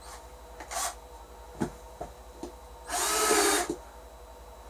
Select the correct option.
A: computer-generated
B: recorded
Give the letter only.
B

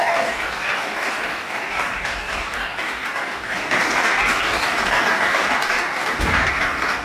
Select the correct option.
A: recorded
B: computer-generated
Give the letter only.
B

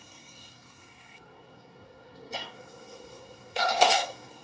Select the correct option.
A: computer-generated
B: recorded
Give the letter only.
A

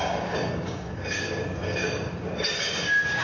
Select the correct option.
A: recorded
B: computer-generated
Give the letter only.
B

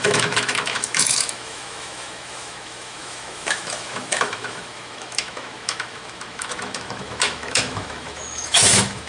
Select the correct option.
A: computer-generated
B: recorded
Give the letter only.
A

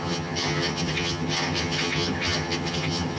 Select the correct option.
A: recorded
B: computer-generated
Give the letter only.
B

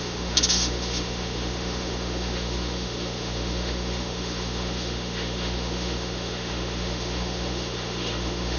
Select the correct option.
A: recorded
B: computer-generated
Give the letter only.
B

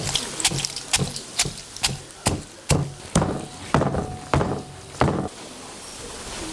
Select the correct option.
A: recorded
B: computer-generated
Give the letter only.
A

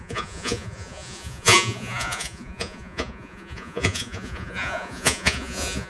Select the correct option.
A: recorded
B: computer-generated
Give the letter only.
B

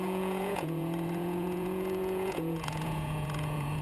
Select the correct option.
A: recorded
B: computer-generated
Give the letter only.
B